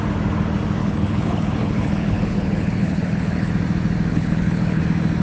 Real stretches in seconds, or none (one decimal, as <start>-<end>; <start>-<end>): 0.0-0.8; 3.5-4.1; 4.8-5.2